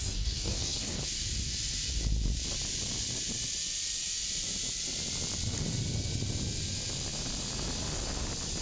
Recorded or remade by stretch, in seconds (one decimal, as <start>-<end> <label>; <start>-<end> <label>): 0.0-1.0 remade; 1.0-8.6 recorded